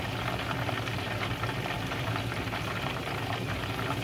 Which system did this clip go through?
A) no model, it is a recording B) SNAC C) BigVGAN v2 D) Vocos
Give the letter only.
A